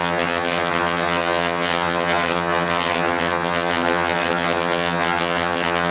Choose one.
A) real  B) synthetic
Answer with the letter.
B